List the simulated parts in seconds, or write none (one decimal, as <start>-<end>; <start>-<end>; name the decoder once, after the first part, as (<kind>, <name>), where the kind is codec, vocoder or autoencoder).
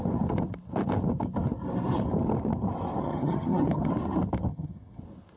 3.0-3.9 (vocoder, HiFi-GAN); 4.5-5.0